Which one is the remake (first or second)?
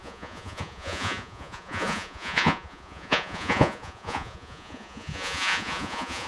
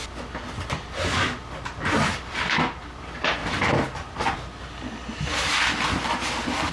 first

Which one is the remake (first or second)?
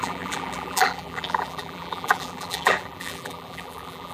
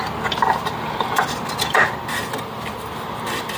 first